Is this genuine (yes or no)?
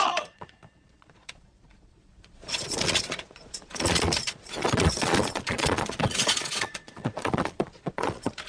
no